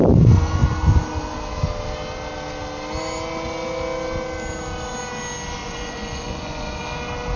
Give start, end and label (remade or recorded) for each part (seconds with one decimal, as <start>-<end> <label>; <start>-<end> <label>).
0.0-5.6 recorded; 5.6-6.8 remade; 6.8-7.4 recorded

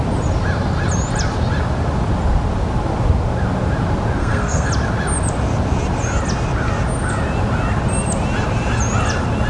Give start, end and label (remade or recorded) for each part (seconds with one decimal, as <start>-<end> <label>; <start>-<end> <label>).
0.0-4.2 recorded; 4.2-4.7 remade; 4.7-9.5 recorded

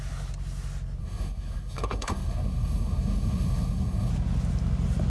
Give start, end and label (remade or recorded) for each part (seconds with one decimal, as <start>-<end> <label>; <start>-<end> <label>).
0.0-1.0 recorded; 1.0-4.1 remade; 4.1-5.1 recorded

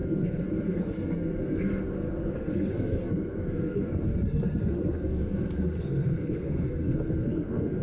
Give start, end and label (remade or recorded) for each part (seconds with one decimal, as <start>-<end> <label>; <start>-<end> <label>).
0.0-7.8 remade

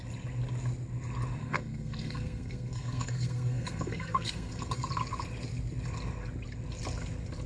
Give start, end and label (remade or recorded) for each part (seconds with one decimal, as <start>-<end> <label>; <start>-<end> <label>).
0.0-1.4 recorded; 1.4-4.9 remade; 4.9-7.5 recorded